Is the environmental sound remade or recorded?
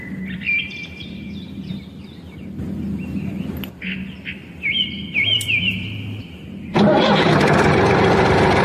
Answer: remade